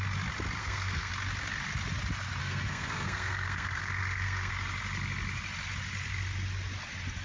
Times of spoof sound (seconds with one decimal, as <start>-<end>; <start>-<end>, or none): 0.6-1.1; 2.4-4.5